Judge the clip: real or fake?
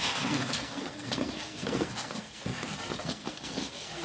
fake